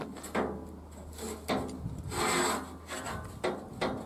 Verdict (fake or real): real